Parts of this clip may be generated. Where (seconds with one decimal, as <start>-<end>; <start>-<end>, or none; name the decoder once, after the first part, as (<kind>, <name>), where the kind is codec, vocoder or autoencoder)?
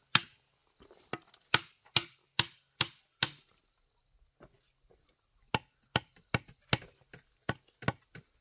none